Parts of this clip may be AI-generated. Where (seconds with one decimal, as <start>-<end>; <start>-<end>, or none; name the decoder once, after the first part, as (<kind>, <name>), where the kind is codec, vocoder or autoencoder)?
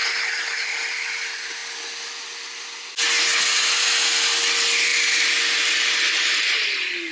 4.9-5.4 (vocoder, BigVGAN v2)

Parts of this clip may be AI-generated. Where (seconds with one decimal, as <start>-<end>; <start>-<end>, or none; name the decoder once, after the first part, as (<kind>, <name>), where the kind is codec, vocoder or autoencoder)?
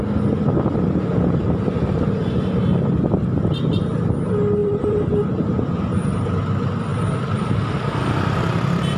2.2-3.8 (vocoder, BigVGAN v2); 4.6-5.2; 6.9-8.4